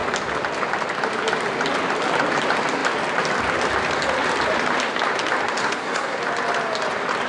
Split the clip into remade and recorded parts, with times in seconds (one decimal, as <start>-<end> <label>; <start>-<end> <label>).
0.0-5.6 recorded; 5.6-6.2 remade; 6.2-7.3 recorded